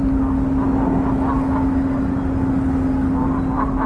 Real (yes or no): yes